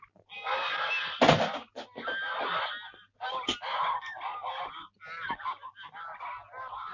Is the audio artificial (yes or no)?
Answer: no